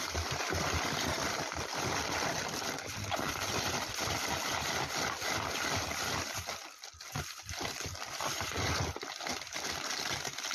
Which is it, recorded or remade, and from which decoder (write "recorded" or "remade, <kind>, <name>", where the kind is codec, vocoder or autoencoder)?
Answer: recorded